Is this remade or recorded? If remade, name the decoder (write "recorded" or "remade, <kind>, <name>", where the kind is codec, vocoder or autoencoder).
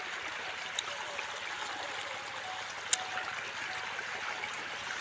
recorded